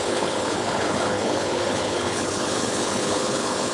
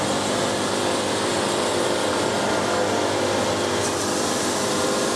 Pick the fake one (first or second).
first